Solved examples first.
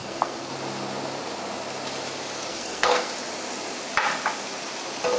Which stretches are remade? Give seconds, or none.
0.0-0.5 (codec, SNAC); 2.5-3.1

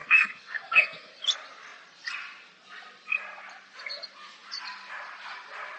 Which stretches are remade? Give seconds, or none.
0.0-1.1 (codec, SNAC)

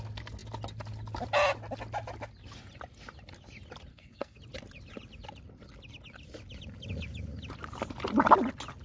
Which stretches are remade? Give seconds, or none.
3.9-4.4 (codec, SNAC)

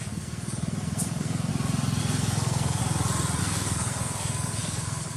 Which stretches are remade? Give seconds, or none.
0.0-1.5 (codec, SNAC); 2.0-2.8; 3.4-5.2

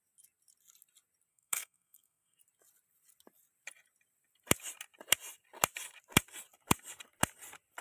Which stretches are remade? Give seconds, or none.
1.3-2.4 (codec, SNAC)